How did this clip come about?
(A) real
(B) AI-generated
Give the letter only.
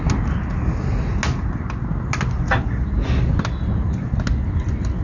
A